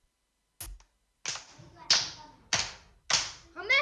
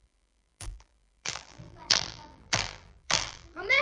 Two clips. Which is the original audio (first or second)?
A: first